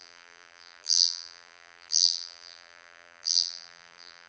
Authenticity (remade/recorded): remade